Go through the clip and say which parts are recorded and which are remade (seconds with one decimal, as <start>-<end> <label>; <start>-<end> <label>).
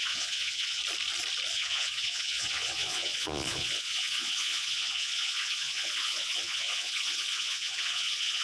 0.0-0.8 remade; 0.8-1.5 recorded; 1.5-8.4 remade